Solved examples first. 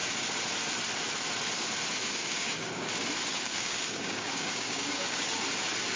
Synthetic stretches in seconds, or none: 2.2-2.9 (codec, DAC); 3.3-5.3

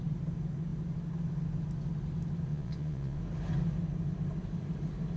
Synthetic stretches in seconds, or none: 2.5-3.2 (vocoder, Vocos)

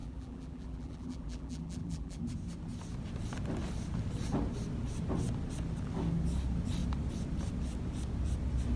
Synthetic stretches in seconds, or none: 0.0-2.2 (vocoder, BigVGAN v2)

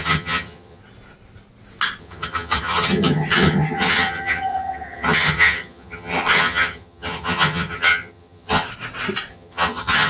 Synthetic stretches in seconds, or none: 0.0-0.8 (vocoder, HiFi-GAN); 2.0-8.7; 9.3-10.1

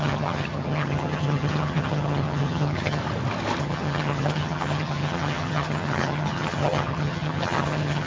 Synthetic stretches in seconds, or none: 0.0-3.0 (vocoder, HiFi-GAN); 3.6-8.1

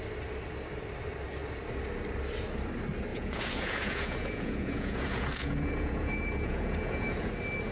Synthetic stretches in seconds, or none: 3.1-7.3 (vocoder, Vocos)